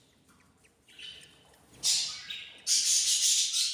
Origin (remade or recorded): recorded